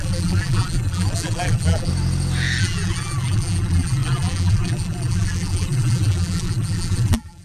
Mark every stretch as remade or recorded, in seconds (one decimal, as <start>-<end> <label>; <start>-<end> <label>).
0.0-1.9 remade; 1.9-2.6 recorded; 2.6-7.4 remade